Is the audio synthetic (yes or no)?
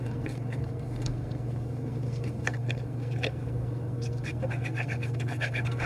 yes